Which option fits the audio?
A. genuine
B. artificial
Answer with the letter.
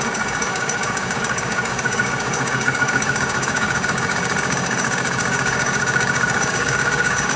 B